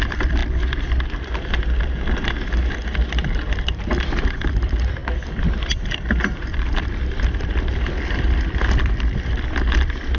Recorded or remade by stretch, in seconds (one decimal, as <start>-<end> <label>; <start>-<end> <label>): 0.0-0.4 remade; 0.4-2.7 recorded; 2.7-5.0 remade; 5.0-6.3 recorded; 6.3-10.2 remade